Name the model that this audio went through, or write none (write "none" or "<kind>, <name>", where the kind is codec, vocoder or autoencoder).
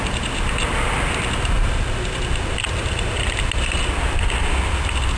none